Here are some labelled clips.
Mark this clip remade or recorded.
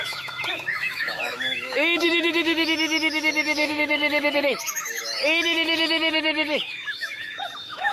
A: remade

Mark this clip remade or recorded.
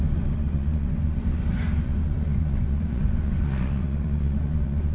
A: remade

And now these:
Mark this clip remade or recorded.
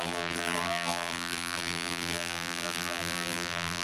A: remade